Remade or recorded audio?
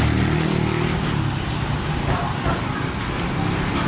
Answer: recorded